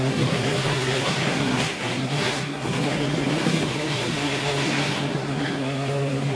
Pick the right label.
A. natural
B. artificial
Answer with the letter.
B